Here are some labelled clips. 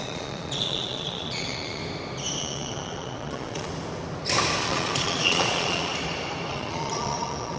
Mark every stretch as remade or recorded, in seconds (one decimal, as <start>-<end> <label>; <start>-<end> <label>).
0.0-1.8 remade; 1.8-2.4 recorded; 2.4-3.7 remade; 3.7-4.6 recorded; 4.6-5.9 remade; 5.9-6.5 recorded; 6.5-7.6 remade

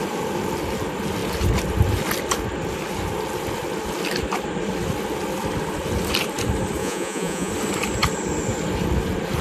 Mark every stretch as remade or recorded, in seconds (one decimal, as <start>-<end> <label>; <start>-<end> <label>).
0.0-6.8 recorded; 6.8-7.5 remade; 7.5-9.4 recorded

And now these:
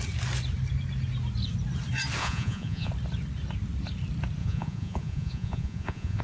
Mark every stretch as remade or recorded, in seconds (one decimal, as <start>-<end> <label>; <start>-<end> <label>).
0.0-2.2 recorded; 2.2-2.9 remade; 2.9-4.4 recorded; 4.4-6.2 remade

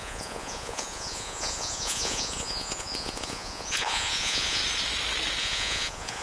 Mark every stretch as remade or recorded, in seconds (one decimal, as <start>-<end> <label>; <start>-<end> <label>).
0.0-4.6 remade; 4.6-5.4 recorded; 5.4-6.2 remade

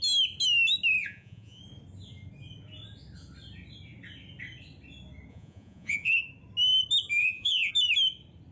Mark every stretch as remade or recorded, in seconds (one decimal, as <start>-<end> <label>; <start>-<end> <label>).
0.0-1.0 recorded; 1.0-1.6 remade; 1.6-5.3 recorded; 5.3-6.1 remade; 6.1-7.2 recorded; 7.2-7.7 remade; 7.7-8.5 recorded

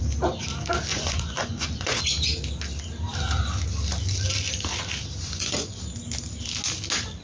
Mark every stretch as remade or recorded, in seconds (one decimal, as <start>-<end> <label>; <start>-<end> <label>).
0.0-0.9 recorded; 0.9-2.0 remade; 2.0-5.2 recorded; 5.2-5.8 remade; 5.8-7.2 recorded

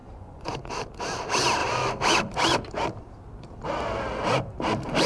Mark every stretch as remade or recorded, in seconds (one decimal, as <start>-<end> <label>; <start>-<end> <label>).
0.0-0.7 remade; 0.7-5.1 recorded